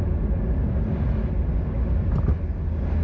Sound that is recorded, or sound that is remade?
recorded